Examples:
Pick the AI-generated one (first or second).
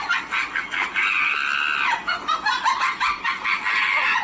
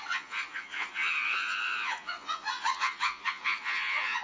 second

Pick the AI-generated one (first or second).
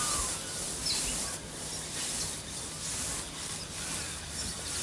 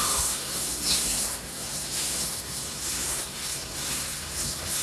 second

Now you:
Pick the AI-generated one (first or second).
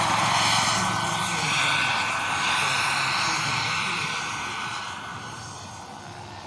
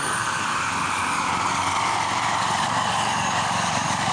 second